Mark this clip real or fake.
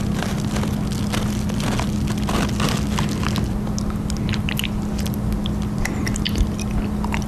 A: real